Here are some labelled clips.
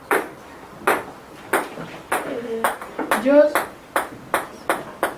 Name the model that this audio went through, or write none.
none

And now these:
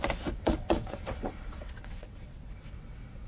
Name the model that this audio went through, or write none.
vocoder, WaveNeXt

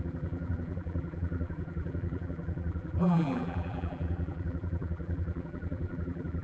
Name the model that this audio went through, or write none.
vocoder, BigVGAN v2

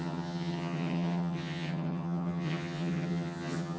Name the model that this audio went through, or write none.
vocoder, HiFi-GAN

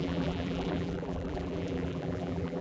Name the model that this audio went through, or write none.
vocoder, BigVGAN v2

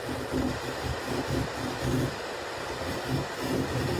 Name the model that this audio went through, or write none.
none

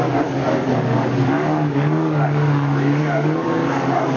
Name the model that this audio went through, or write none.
codec, DAC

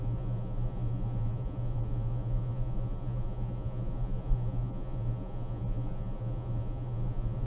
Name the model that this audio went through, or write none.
vocoder, Vocos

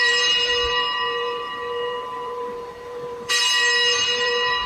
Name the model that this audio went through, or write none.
vocoder, BigVGAN v2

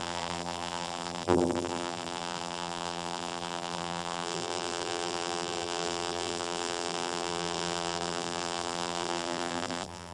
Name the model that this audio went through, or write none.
vocoder, BigVGAN v2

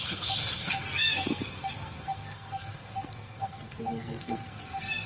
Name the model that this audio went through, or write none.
codec, SNAC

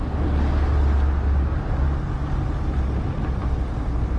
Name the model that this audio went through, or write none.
none